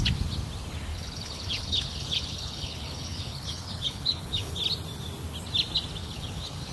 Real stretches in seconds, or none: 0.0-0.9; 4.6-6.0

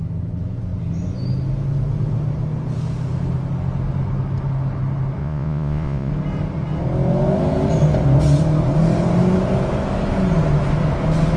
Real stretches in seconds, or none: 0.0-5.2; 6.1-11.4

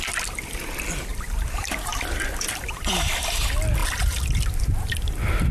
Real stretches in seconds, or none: 0.0-1.1; 2.9-5.5

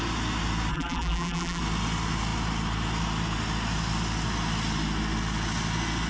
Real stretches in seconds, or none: 0.0-0.7; 1.6-6.1